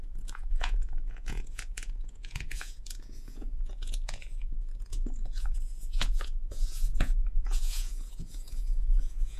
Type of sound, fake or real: fake